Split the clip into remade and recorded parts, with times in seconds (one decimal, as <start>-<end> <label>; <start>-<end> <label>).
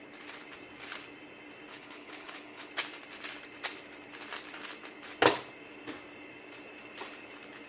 0.0-1.7 recorded; 1.7-2.7 remade; 2.7-7.7 recorded